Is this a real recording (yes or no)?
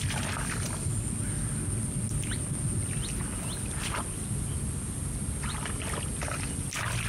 yes